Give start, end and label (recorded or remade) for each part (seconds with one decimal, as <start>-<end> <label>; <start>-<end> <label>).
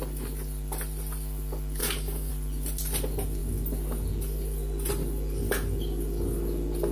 0.0-1.8 recorded; 1.8-2.3 remade; 2.3-6.9 recorded